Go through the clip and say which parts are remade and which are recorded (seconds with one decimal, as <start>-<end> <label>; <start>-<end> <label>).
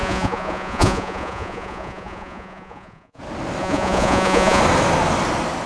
0.0-3.2 remade; 3.2-3.6 recorded; 3.6-4.6 remade; 4.6-5.7 recorded